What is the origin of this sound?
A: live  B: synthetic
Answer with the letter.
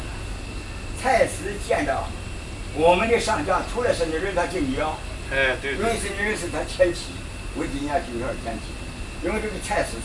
A